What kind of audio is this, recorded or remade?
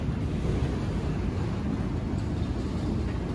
recorded